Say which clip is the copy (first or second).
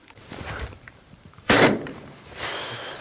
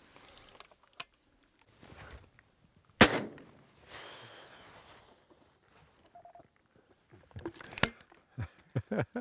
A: first